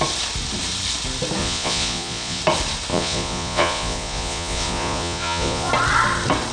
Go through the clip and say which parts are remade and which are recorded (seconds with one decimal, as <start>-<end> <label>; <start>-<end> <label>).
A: 0.0-1.4 recorded; 1.4-2.4 remade; 2.4-2.9 recorded; 2.9-5.7 remade; 5.7-6.5 recorded